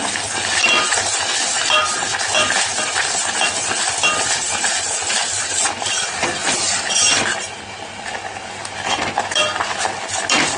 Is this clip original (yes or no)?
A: yes